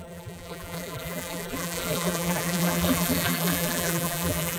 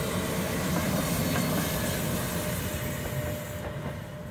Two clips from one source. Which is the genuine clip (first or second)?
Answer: second